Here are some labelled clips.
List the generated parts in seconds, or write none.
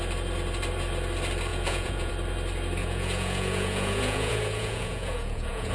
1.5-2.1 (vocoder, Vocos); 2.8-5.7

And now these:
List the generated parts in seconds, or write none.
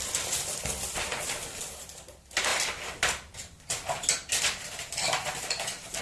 none